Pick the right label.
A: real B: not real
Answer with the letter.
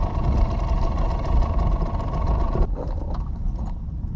A